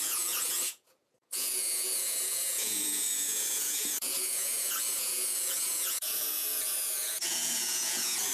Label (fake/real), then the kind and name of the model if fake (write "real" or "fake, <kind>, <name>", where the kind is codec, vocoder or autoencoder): fake, vocoder, Vocos